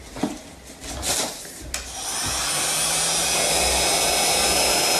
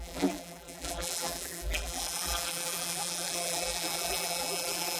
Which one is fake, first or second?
second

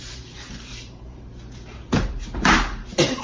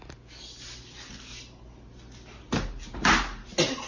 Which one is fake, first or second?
first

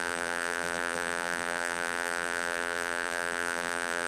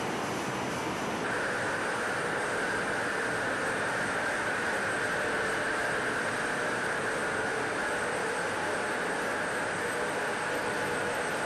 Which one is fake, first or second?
first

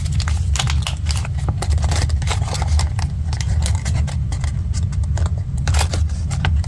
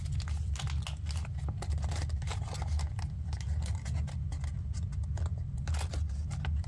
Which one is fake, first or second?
first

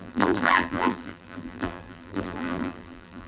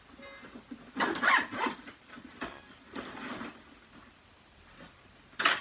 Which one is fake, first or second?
first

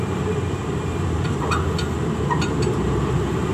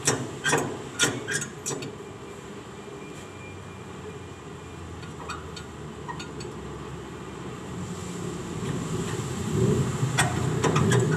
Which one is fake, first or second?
first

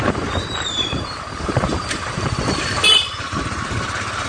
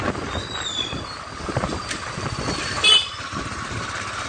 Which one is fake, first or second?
first